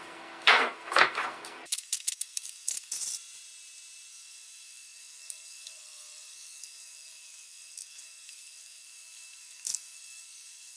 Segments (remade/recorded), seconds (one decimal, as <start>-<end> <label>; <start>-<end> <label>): 0.0-3.0 remade; 3.0-4.1 recorded; 4.1-10.8 remade